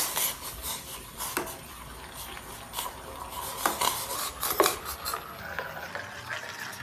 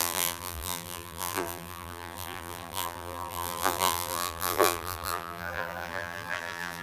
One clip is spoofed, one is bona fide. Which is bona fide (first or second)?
first